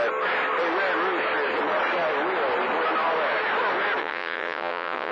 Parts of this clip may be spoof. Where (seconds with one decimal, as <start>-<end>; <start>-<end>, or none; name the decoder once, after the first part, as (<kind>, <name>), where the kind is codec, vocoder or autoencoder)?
4.0-5.1 (vocoder, WaveNeXt)